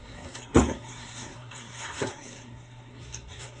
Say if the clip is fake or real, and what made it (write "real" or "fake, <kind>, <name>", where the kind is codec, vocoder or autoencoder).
fake, codec, SNAC